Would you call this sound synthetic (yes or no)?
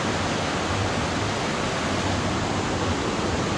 no